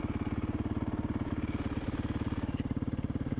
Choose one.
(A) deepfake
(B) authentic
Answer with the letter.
B